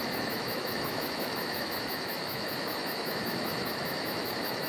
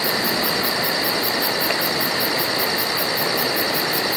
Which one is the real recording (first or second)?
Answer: second